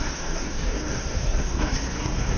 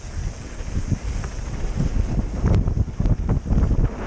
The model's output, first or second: first